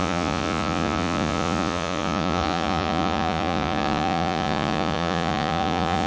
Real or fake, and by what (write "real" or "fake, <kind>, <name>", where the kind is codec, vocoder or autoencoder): fake, vocoder, Vocos